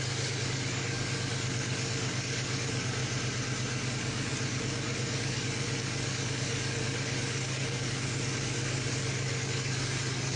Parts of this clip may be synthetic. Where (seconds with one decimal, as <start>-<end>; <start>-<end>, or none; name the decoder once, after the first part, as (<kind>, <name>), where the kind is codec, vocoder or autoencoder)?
0.0-3.0 (codec, DAC); 3.9-10.4